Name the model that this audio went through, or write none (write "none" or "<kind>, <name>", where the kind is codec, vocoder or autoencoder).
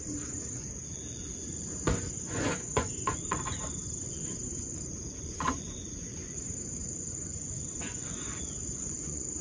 vocoder, Vocos